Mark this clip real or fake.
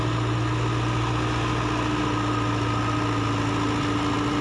real